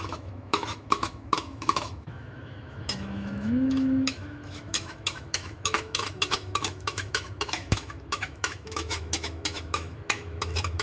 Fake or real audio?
fake